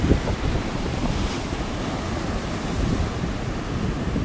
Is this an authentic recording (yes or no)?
yes